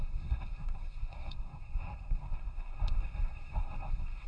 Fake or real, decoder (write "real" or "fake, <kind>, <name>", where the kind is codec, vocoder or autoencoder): fake, codec, SNAC